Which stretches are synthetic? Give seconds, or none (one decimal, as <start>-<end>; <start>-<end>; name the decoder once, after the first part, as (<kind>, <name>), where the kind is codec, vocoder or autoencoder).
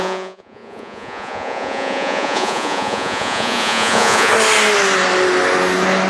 0.0-4.3 (vocoder, Vocos)